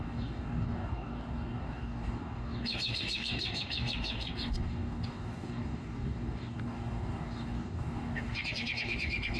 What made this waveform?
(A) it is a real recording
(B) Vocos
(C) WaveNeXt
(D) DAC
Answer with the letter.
D